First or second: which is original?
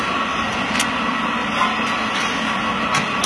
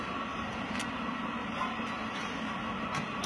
first